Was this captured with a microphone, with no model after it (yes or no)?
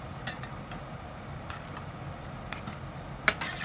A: yes